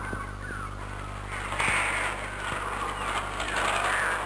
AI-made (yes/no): no